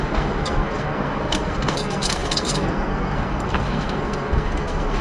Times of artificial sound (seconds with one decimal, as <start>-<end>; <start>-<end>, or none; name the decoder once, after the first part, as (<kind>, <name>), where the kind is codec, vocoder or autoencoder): 0.0-5.0 (codec, SNAC)